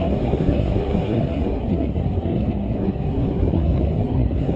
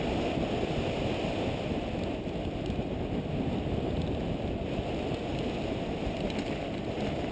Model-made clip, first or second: first